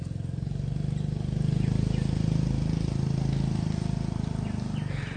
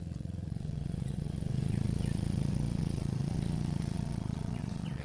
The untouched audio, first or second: first